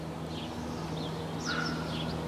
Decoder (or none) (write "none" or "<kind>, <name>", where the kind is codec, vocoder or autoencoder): none